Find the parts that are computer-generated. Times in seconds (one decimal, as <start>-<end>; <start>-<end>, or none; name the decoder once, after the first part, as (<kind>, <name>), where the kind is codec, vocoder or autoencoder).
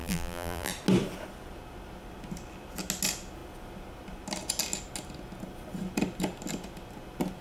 0.0-0.7 (vocoder, BigVGAN v2)